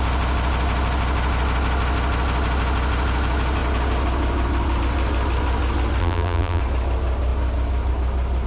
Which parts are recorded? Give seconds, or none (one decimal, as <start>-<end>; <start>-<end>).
0.0-6.0; 6.6-8.5